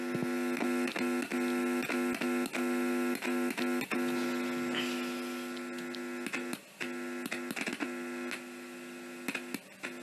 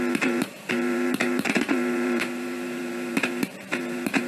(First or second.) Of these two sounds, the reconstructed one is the second